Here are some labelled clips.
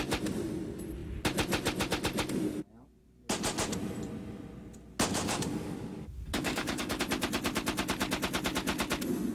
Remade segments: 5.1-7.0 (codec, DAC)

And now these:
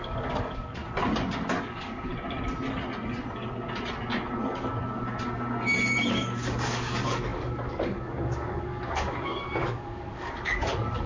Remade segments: 0.0-0.8 (codec, DAC); 1.6-2.1; 6.1-11.1